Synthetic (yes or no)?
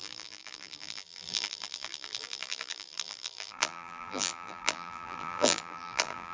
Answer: yes